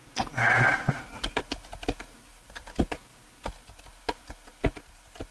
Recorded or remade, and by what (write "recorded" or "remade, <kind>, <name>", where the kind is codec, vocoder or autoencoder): recorded